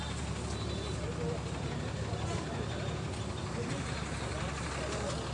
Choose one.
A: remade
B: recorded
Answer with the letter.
B